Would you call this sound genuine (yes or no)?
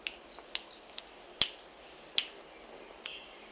yes